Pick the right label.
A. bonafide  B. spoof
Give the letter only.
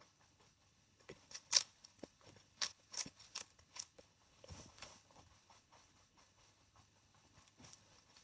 B